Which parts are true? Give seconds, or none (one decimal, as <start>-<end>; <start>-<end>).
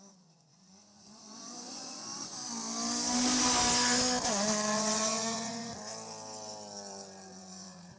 2.4-4.2; 5.7-7.4